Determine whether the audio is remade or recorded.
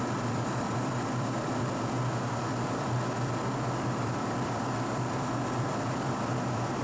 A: remade